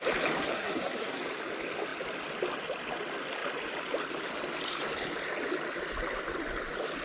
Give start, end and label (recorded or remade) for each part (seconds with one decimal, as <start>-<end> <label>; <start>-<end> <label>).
0.0-0.4 recorded; 0.4-1.2 remade; 1.2-7.0 recorded